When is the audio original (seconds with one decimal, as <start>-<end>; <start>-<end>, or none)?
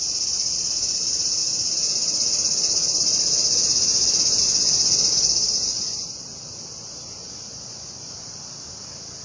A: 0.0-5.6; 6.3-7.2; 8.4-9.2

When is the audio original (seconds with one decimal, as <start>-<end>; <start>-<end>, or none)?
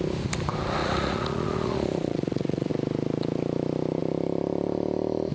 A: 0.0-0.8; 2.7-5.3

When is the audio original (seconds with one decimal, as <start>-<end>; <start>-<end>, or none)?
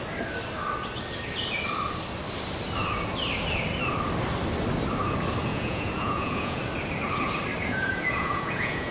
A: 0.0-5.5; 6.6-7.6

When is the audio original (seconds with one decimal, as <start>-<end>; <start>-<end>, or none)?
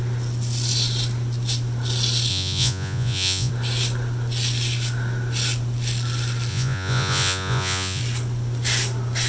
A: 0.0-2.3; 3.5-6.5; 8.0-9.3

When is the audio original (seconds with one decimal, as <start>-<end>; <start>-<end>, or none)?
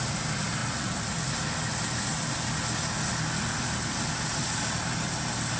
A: 0.0-0.6; 1.3-5.6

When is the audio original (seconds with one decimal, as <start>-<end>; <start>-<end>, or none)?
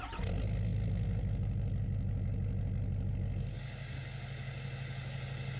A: 0.0-5.6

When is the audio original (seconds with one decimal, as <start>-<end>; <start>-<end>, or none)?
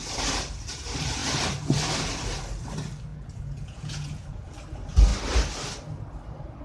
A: 0.0-3.1; 4.5-6.6